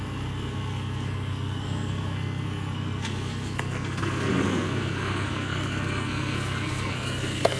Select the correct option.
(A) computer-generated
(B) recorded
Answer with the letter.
A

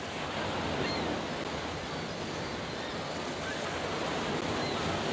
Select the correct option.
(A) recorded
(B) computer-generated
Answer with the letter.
A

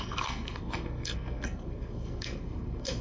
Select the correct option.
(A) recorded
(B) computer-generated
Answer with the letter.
B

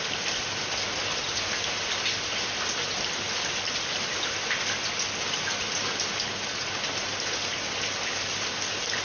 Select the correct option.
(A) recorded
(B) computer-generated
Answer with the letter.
A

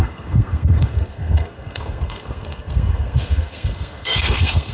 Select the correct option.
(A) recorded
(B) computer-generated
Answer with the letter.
B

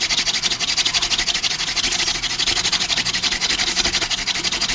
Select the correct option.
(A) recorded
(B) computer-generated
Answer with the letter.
A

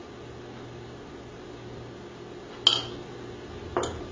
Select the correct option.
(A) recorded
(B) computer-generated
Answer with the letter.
A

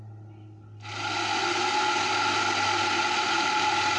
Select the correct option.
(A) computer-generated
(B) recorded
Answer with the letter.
B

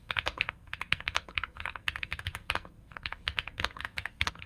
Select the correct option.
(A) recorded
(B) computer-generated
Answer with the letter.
B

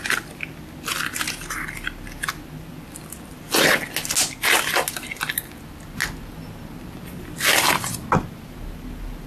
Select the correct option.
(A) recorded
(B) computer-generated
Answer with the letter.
A